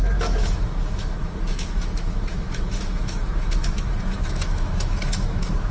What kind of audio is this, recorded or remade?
remade